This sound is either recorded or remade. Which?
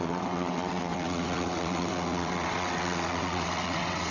remade